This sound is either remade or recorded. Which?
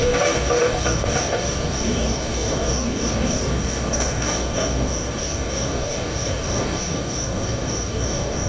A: remade